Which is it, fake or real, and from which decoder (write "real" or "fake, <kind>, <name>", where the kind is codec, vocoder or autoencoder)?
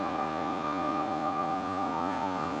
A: fake, vocoder, Vocos